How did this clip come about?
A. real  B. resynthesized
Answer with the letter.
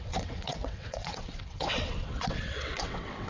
B